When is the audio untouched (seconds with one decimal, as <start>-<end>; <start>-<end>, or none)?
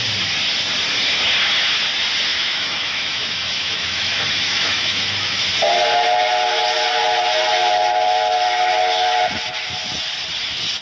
0.0-2.3; 5.4-10.8